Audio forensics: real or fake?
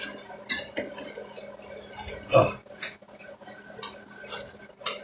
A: real